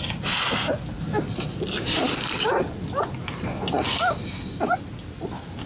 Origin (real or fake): real